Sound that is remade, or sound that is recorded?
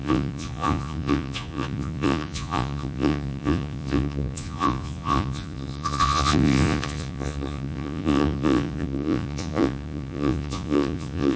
remade